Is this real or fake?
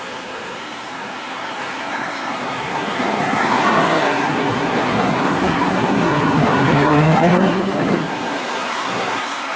fake